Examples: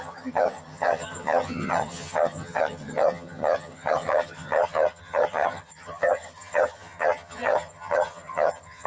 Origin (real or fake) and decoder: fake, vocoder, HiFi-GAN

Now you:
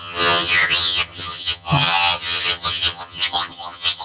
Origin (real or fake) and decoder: fake, vocoder, HiFi-GAN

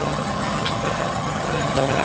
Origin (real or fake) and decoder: fake, vocoder, HiFi-GAN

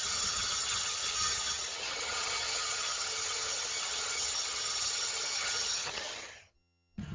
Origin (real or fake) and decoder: fake, vocoder, HiFi-GAN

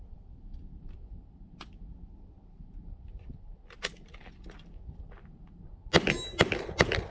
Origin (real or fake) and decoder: real